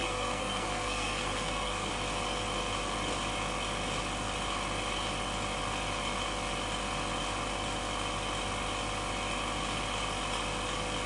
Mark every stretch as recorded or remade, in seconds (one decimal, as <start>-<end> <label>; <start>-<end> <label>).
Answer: 0.0-1.9 remade; 1.9-11.1 recorded